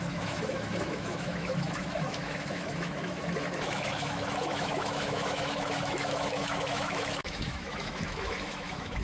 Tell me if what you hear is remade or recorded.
remade